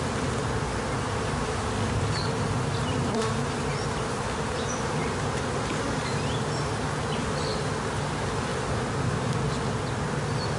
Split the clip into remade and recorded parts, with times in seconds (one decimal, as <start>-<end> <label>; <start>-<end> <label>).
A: 0.0-10.6 recorded